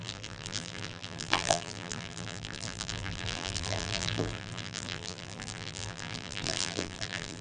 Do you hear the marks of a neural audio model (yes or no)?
yes